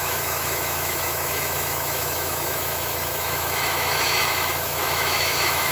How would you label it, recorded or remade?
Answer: remade